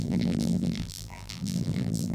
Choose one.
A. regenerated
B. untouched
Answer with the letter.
A